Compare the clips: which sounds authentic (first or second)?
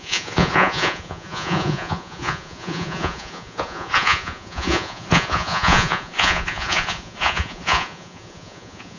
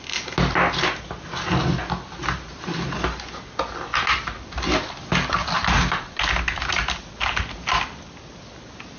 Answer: second